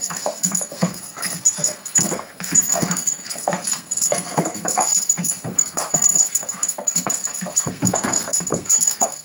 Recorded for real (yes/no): no